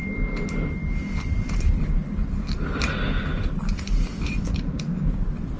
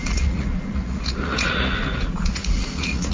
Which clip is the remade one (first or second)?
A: second